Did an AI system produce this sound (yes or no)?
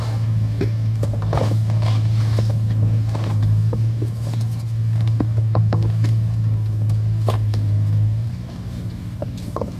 yes